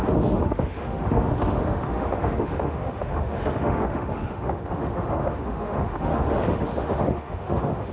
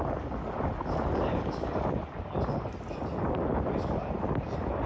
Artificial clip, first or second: first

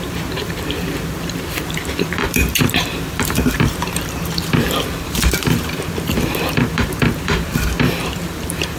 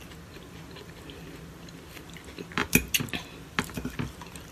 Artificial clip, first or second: first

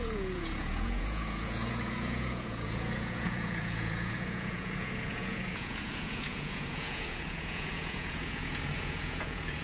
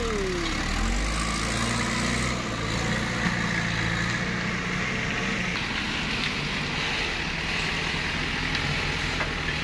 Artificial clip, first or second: first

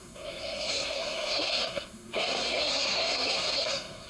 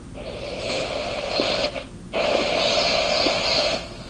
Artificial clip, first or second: first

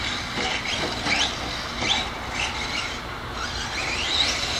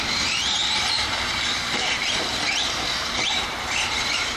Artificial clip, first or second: second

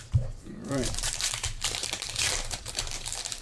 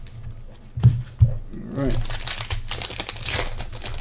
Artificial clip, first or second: first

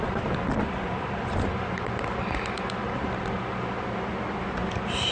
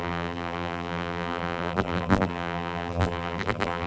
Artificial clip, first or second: second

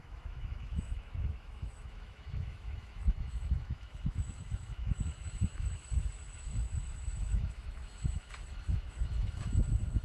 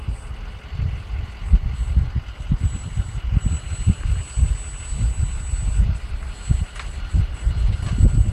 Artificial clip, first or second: first